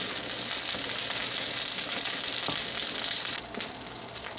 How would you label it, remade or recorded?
recorded